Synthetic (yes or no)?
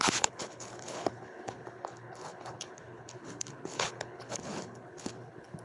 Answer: yes